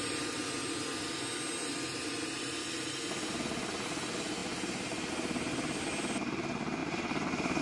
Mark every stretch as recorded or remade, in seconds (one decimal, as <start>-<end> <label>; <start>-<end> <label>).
0.0-7.6 recorded